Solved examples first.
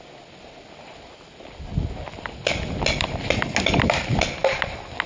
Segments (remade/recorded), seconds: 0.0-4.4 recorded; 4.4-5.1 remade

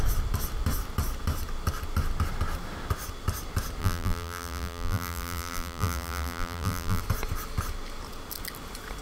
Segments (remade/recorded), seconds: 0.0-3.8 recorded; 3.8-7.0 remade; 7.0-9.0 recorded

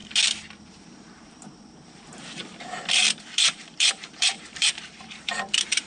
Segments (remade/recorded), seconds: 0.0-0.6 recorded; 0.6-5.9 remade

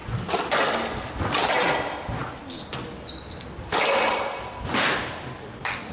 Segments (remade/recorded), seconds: 0.0-5.9 recorded